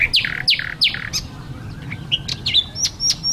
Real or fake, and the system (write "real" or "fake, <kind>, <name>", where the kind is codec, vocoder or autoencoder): real